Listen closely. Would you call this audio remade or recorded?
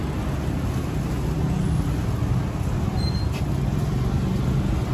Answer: recorded